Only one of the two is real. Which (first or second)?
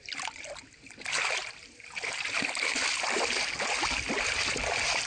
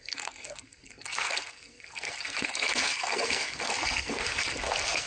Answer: first